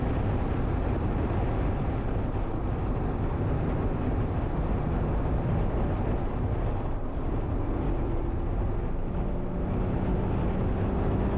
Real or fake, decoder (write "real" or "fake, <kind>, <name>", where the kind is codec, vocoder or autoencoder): real